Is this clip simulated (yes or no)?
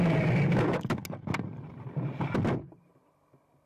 no